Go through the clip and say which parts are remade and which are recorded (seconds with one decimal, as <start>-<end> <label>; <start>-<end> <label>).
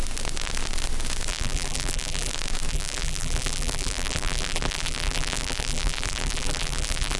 0.0-1.3 recorded; 1.3-2.3 remade; 2.3-2.7 recorded; 2.7-7.2 remade